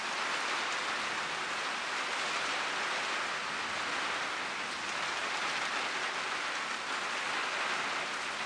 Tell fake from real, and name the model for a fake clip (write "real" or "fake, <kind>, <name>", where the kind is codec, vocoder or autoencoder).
real